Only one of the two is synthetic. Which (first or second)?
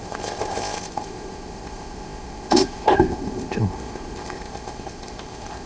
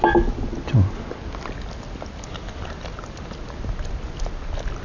first